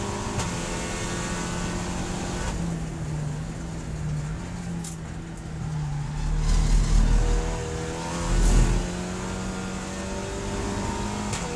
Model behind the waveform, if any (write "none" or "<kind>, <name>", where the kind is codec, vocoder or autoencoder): none